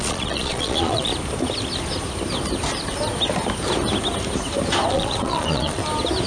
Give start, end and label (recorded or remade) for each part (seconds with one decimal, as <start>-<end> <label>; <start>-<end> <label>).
0.0-1.1 remade; 1.1-4.9 recorded; 4.9-5.8 remade; 5.8-6.3 recorded